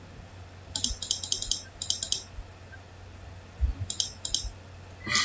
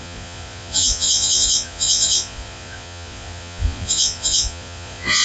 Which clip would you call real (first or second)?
first